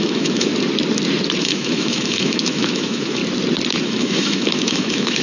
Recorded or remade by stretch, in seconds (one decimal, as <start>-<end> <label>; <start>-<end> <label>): 0.0-0.5 remade; 0.5-1.4 recorded; 1.4-3.2 remade; 3.2-3.8 recorded; 3.8-5.2 remade